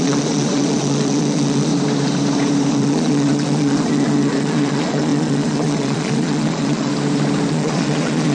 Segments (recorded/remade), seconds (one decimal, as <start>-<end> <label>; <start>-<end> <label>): 0.0-1.7 remade; 1.7-2.7 recorded; 2.7-6.9 remade; 6.9-7.5 recorded; 7.5-8.3 remade